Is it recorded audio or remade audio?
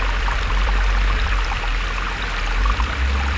remade